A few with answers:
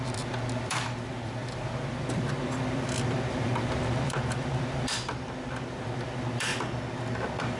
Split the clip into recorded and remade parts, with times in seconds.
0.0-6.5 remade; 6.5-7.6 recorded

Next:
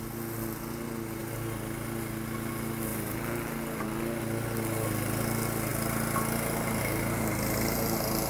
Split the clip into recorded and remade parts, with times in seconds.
0.0-8.3 recorded

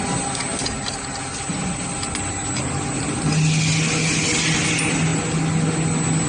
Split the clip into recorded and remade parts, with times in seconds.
0.0-6.3 recorded